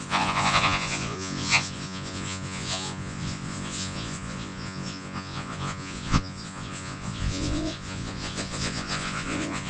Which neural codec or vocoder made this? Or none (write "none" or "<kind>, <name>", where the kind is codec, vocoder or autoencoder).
vocoder, Vocos